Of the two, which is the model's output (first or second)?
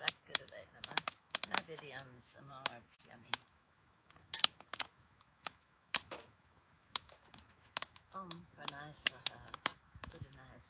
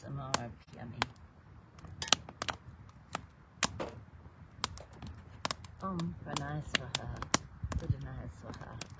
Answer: first